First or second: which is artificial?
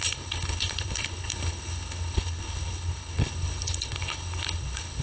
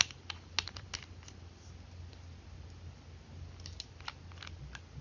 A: first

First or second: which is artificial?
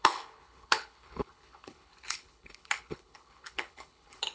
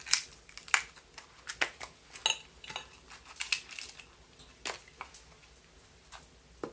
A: first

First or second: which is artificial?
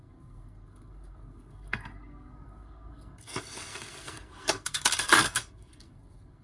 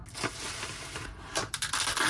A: first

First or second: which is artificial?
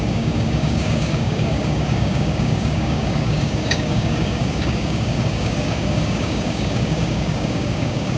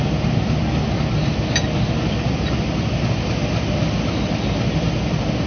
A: first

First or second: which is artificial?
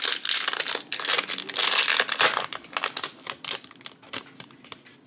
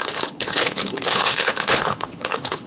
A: second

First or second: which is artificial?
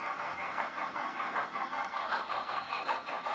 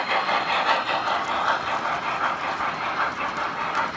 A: first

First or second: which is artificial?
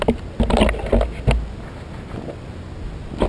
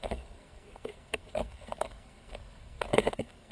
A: second